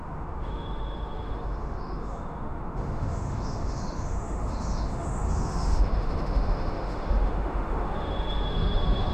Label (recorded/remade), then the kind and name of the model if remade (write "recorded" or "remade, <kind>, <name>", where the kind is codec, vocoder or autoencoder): remade, autoencoder, DAC-VAE